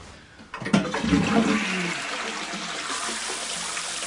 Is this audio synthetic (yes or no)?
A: no